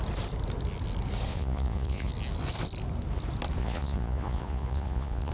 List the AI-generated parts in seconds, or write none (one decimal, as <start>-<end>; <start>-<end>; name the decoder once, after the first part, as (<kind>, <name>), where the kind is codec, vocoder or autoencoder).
1.3-2.1 (vocoder, Vocos); 3.6-5.3